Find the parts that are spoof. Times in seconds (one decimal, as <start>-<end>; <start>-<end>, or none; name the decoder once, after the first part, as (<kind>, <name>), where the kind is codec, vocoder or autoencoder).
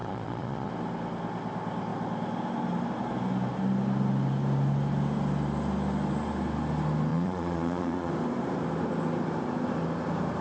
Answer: 0.0-0.7 (vocoder, Vocos); 7.1-8.1